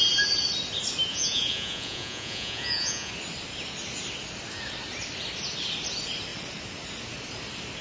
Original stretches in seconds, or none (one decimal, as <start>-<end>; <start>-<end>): 0.0-1.1; 3.1-7.8